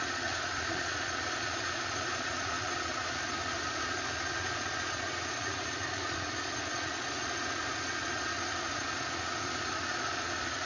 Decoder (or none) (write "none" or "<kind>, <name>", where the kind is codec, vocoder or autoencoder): vocoder, Vocos